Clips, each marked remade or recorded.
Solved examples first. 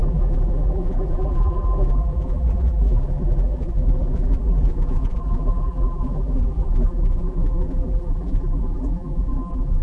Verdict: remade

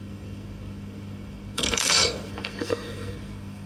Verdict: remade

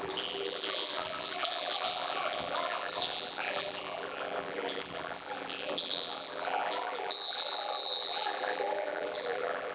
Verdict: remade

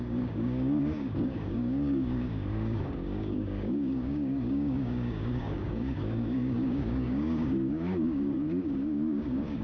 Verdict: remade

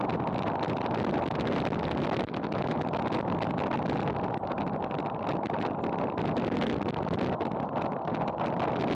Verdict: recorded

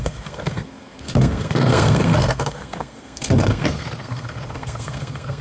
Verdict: remade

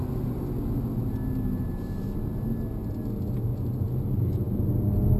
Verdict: recorded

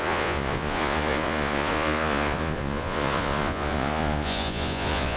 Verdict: remade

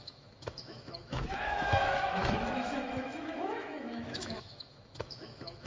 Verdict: remade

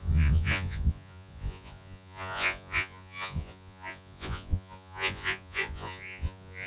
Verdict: remade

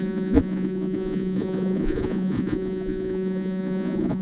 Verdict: remade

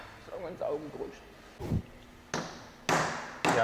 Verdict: recorded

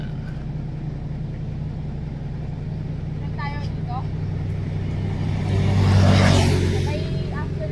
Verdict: recorded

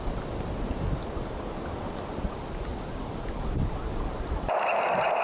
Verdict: recorded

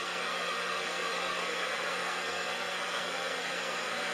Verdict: remade